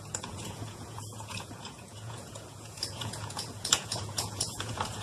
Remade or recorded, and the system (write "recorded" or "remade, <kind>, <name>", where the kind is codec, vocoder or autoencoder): remade, vocoder, Vocos